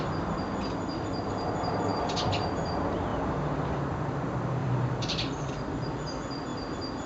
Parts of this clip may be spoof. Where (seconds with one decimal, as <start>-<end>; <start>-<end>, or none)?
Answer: 3.1-3.8; 4.6-5.5; 6.5-7.1